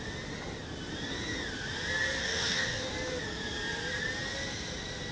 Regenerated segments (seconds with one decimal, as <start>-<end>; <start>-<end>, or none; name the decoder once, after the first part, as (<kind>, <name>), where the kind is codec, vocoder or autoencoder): 2.2-2.9 (codec, DAC)